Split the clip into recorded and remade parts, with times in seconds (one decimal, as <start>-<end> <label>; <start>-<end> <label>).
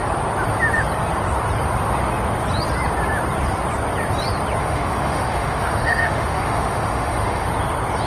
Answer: 0.0-4.6 recorded; 4.6-7.5 remade; 7.5-8.1 recorded